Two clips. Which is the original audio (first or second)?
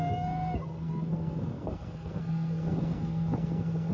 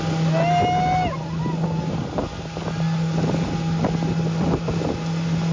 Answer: second